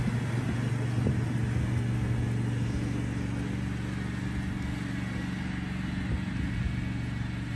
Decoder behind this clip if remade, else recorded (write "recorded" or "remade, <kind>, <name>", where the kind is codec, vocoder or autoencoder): recorded